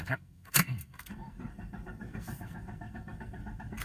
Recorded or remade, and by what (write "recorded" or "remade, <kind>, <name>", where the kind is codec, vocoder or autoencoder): remade, codec, SNAC